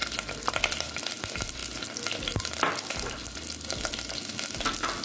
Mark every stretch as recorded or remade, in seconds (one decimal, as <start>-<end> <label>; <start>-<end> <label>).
0.0-5.0 recorded